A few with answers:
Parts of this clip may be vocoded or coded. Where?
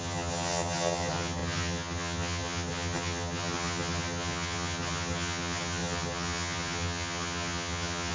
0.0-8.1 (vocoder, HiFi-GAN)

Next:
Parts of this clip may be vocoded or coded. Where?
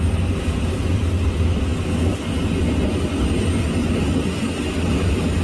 none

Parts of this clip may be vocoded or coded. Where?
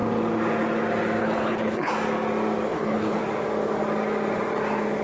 1.2-1.9 (codec, HILCodec); 2.7-3.2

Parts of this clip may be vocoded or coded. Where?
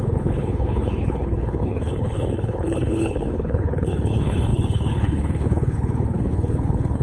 0.0-7.0 (codec, HILCodec)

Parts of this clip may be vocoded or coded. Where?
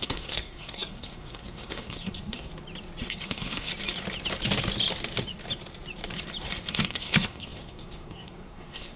0.0-2.5 (codec, SNAC); 3.1-3.7; 6.7-9.0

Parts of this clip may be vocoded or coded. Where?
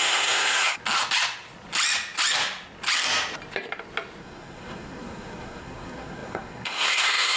0.0-0.8 (codec, SNAC); 4.2-7.4